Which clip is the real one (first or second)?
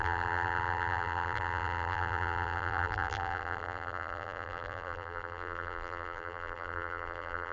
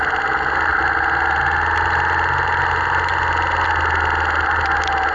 second